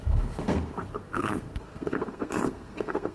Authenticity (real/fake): fake